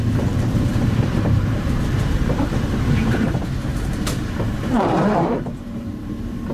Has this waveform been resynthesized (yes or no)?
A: yes